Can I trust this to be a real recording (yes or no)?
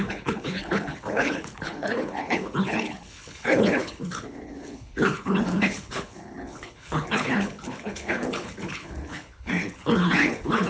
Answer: no